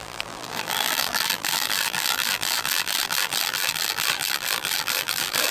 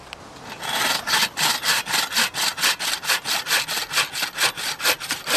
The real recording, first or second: second